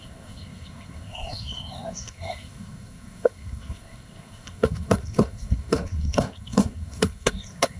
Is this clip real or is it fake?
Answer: fake